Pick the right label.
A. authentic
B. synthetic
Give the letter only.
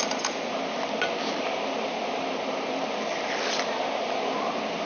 A